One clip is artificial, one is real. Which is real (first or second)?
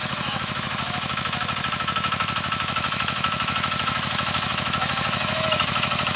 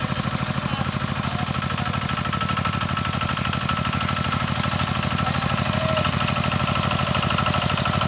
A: second